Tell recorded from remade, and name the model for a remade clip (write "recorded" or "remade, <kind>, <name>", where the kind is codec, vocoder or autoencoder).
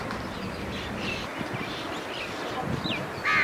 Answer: recorded